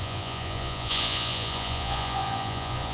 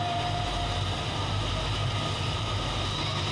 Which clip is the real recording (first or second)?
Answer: second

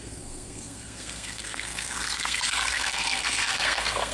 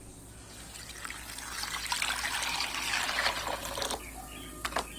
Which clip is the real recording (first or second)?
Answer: second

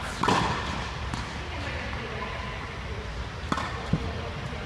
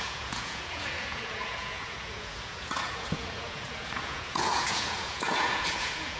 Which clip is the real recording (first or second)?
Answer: first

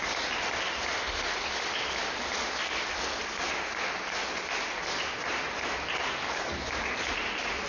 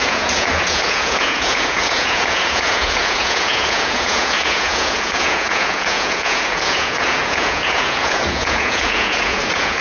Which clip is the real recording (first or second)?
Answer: first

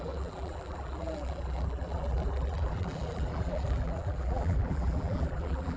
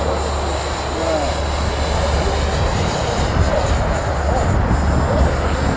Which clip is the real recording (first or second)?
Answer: second